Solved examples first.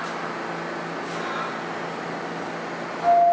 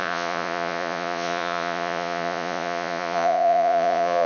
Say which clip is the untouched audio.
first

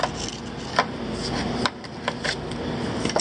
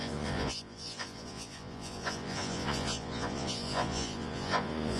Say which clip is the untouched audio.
first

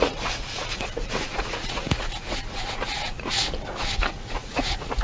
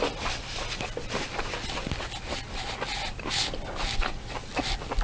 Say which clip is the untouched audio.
second